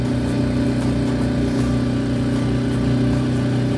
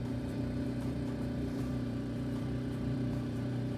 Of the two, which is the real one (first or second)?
first